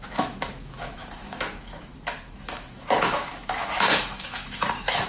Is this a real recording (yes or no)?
no